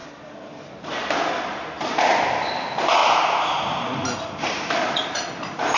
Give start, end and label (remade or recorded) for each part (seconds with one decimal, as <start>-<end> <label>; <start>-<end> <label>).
0.0-5.8 recorded